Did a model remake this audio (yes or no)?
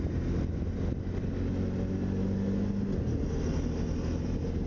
no